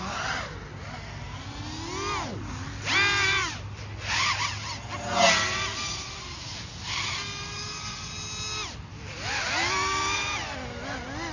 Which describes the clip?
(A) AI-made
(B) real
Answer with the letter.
B